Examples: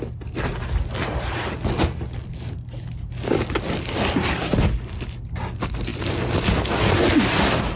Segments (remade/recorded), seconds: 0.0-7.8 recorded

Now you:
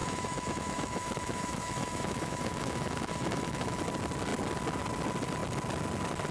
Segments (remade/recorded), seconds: 0.0-3.8 remade; 3.8-6.3 recorded

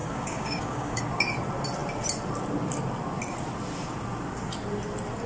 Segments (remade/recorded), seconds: 0.0-1.0 remade; 1.0-5.3 recorded

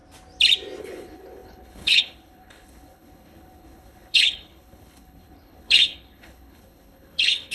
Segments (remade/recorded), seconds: 0.0-0.8 recorded; 0.8-7.5 remade